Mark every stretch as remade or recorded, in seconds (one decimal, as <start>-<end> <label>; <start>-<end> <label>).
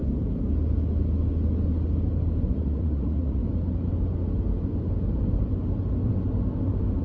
0.0-2.5 recorded; 2.5-3.4 remade; 3.4-7.0 recorded